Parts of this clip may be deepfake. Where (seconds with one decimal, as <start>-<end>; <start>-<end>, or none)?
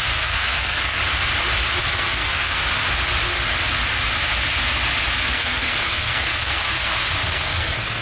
0.0-1.0; 1.8-2.6; 5.2-8.0